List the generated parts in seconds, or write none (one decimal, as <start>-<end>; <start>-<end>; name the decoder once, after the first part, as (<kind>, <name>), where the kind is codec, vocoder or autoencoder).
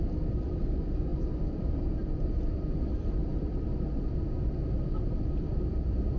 none